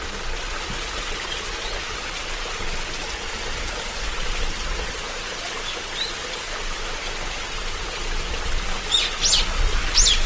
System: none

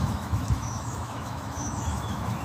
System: autoencoder, DAC-VAE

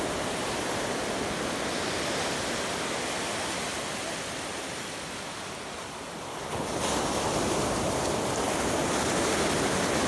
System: none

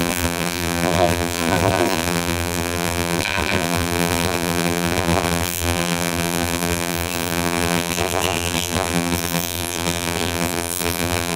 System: vocoder, BigVGAN v2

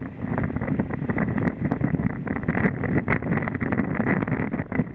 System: none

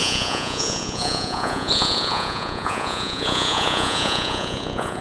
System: vocoder, Vocos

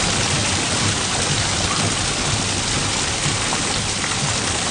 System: none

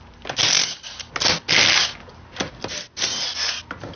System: none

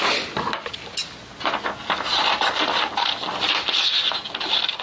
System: none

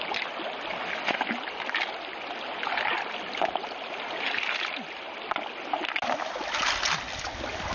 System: none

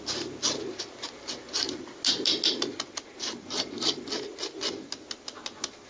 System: none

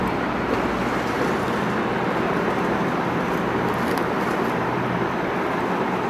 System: none